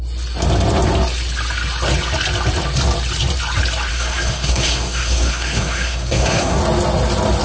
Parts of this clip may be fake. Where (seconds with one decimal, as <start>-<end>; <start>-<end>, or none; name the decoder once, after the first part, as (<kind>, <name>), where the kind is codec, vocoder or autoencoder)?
3.9-6.6 (codec, SNAC)